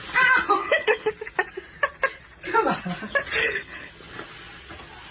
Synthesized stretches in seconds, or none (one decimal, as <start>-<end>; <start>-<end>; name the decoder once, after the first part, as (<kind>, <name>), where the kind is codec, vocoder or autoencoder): 0.6-1.1 (codec, HILCodec); 3.4-3.9